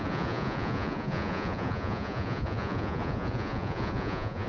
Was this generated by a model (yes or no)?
yes